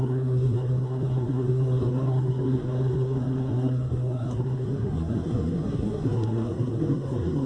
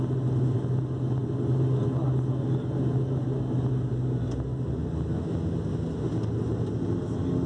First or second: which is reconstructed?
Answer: first